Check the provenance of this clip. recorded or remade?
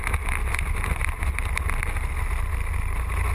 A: recorded